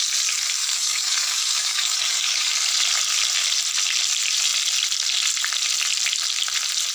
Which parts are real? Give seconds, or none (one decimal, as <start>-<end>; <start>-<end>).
0.0-0.6; 2.5-6.9